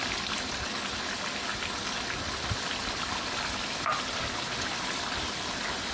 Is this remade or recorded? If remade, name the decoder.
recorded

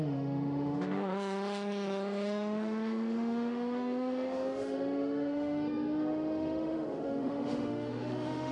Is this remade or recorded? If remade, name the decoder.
remade, autoencoder, DAC-VAE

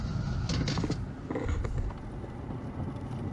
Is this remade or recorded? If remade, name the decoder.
recorded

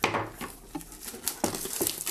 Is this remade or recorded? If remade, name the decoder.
recorded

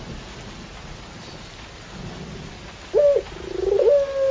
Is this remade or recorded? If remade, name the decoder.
recorded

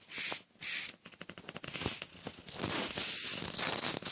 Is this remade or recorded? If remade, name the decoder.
recorded